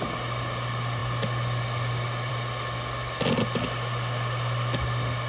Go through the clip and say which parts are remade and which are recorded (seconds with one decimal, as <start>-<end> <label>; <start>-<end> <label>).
0.0-5.3 recorded